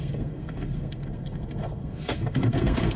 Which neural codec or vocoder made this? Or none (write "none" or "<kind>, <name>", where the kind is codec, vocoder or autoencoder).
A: codec, SNAC